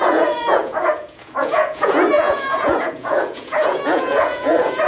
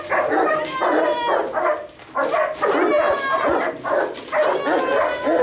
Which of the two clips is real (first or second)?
second